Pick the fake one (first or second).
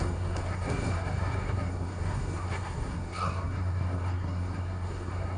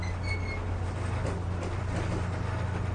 first